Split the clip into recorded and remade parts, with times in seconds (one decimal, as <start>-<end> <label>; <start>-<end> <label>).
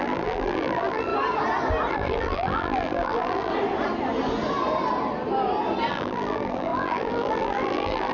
0.0-1.1 remade; 1.1-1.9 recorded; 1.9-3.5 remade; 3.5-5.9 recorded; 5.9-8.1 remade